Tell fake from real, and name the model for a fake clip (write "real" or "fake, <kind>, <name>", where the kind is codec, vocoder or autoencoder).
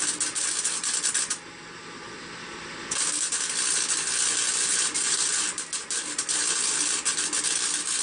real